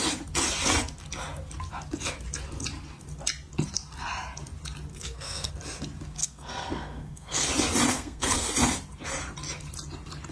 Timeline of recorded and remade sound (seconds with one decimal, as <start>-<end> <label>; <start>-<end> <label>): 0.0-4.9 recorded; 4.9-5.5 remade; 5.5-6.2 recorded; 6.2-7.5 remade; 7.5-7.9 recorded; 7.9-8.5 remade; 8.5-10.3 recorded

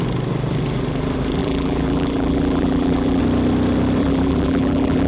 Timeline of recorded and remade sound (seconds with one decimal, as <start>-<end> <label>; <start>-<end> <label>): 0.0-1.4 recorded; 1.4-3.2 remade; 3.2-4.0 recorded; 4.0-5.1 remade

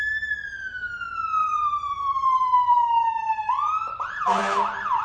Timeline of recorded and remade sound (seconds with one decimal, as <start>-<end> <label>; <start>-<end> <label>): 0.0-1.4 recorded; 1.4-4.4 remade; 4.4-5.0 recorded

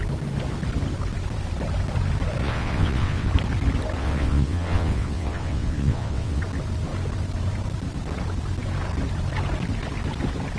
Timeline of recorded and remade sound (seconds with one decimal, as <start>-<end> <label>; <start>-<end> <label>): 0.0-2.4 recorded; 2.4-3.3 remade; 3.3-4.0 recorded; 4.0-6.4 remade; 6.4-10.6 recorded

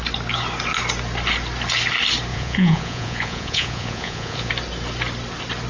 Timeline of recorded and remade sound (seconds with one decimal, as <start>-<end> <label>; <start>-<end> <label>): 0.0-2.3 recorded; 2.3-4.5 remade; 4.5-5.7 recorded